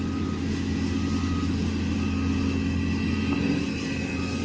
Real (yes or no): yes